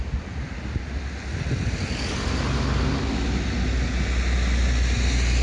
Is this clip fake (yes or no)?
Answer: no